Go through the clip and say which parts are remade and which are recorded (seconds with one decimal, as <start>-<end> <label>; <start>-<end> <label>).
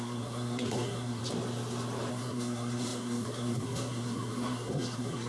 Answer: 0.0-1.2 remade; 1.2-2.1 recorded; 2.1-5.3 remade